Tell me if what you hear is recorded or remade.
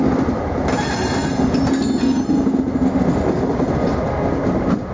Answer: recorded